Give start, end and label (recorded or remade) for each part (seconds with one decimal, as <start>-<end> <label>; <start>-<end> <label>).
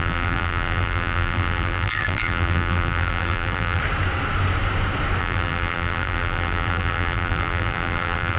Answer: 0.0-3.8 remade; 3.8-5.2 recorded; 5.2-8.4 remade